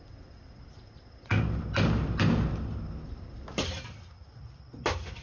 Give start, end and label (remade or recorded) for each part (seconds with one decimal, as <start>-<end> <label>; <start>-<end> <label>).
0.0-5.2 recorded